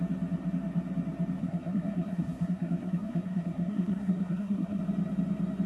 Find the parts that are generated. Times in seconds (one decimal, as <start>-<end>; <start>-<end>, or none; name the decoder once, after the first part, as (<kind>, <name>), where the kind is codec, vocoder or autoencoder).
1.4-4.8 (codec, SNAC)